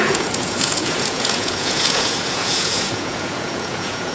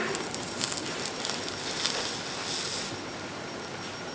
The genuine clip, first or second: second